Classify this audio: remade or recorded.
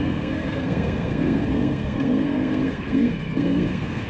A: remade